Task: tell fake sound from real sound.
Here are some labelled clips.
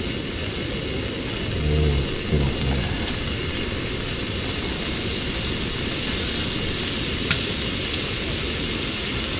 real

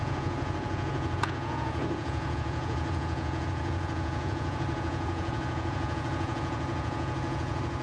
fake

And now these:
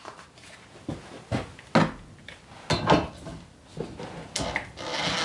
real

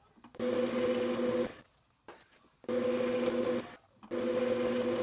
real